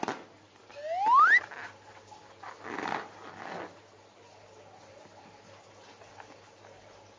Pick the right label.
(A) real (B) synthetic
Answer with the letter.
A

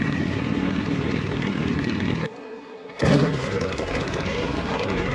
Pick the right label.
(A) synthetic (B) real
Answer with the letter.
A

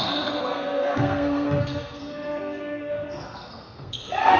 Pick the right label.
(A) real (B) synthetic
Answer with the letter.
B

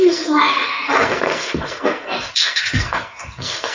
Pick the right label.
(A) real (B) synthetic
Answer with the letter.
B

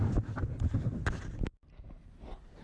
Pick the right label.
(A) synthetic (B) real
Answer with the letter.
B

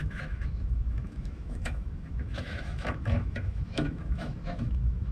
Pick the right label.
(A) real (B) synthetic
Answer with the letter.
B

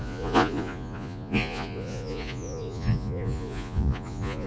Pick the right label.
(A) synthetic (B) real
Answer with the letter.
A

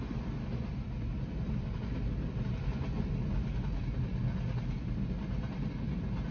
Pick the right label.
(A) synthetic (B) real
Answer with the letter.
B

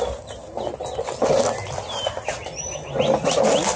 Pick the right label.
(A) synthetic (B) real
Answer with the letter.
B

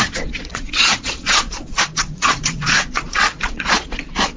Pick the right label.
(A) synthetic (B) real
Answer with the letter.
A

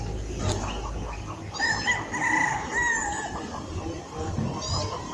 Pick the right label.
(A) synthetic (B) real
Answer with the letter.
B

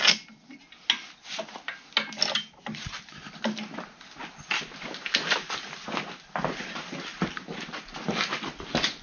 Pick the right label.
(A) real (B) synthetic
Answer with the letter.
A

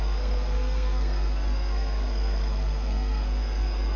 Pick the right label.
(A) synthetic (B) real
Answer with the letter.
A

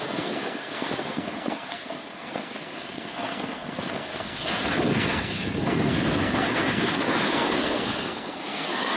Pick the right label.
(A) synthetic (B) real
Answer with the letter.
A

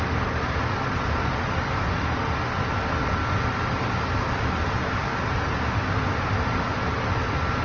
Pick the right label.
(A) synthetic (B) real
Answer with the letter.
B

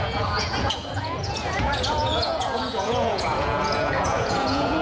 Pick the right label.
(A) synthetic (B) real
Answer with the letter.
A